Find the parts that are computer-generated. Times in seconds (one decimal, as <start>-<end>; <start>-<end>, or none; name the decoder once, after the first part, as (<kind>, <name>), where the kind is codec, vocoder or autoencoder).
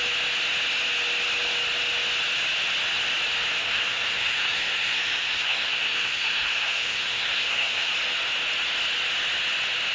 3.6-7.9 (codec, SNAC)